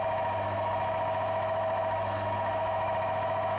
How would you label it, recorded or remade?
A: remade